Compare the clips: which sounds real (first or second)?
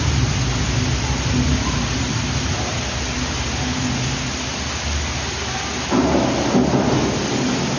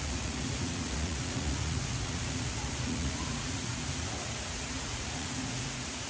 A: first